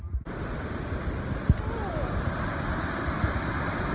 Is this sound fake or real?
real